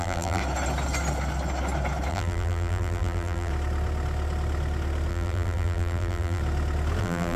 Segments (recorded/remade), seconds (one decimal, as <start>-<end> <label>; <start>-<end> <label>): 0.0-0.4 remade; 0.4-2.1 recorded; 2.1-3.5 remade; 3.5-5.1 recorded; 5.1-6.4 remade; 6.4-7.0 recorded; 7.0-7.4 remade